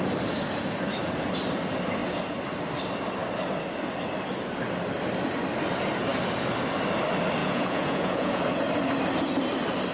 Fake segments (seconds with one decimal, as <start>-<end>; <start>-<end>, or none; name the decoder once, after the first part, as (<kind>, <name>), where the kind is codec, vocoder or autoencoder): 7.4-8.4 (vocoder, Vocos)